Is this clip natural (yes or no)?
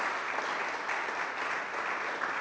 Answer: yes